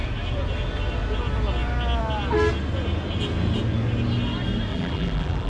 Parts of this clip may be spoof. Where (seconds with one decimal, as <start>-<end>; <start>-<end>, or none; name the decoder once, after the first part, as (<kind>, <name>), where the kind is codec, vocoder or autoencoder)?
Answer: 4.7-5.5 (vocoder, BigVGAN v2)